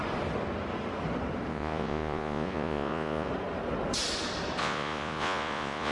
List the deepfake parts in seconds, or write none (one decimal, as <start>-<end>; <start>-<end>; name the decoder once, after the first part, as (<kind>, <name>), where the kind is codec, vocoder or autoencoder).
1.5-3.3 (vocoder, Vocos); 4.6-5.9